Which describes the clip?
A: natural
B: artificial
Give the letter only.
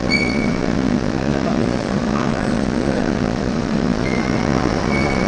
B